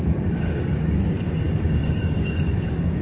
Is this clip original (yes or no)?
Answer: no